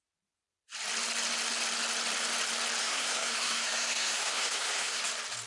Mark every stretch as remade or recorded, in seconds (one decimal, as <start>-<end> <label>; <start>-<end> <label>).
0.0-2.8 recorded; 2.8-5.0 remade; 5.0-5.5 recorded